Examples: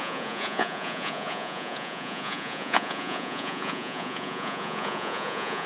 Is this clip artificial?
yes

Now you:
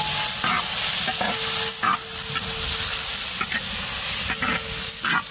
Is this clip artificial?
no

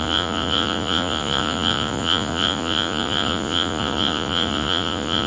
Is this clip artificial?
yes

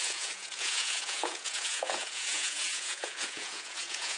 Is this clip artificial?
yes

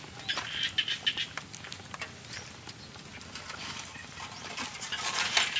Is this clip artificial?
no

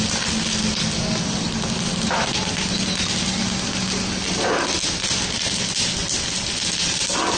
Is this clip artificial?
no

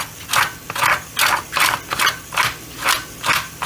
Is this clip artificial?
no